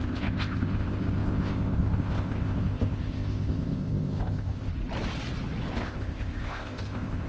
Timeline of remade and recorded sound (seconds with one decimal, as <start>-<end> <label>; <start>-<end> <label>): 0.0-4.7 remade; 4.7-5.7 recorded; 5.7-7.3 remade